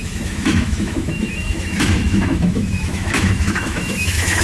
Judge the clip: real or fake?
fake